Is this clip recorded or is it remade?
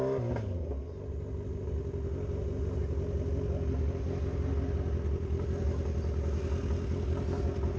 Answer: recorded